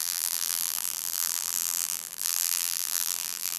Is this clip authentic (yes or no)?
no